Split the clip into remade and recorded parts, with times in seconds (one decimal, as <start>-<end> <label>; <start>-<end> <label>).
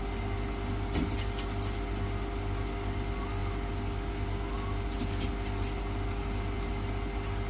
0.0-7.5 recorded